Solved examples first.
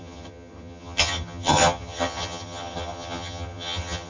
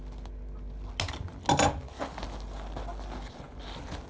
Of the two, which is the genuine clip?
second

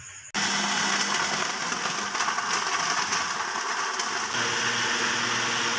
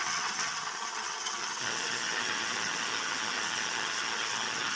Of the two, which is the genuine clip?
first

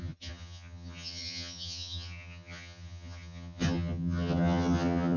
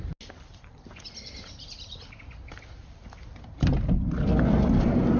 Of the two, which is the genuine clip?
second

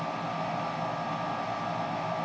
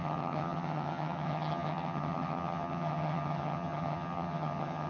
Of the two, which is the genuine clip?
first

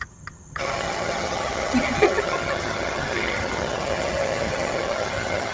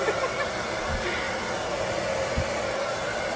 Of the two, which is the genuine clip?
second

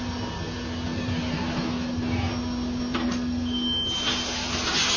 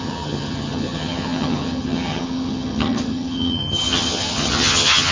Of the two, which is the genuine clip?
first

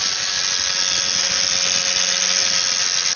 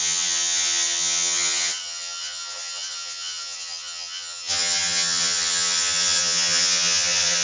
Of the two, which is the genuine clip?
first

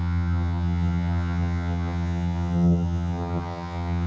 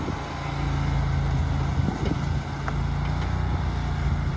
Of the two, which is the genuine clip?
second